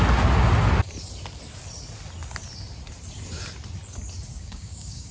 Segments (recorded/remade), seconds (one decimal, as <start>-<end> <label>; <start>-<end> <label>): 0.0-4.3 recorded; 4.3-5.1 remade